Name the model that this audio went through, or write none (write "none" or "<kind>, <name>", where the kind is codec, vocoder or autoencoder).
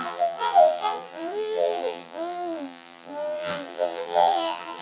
vocoder, BigVGAN v2